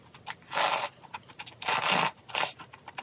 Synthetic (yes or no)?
no